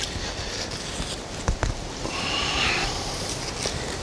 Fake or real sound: real